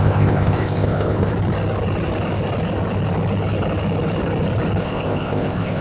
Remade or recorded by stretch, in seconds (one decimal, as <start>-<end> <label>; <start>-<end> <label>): 0.0-1.3 remade; 1.3-4.8 recorded; 4.8-5.8 remade